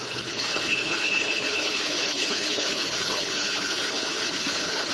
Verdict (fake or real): fake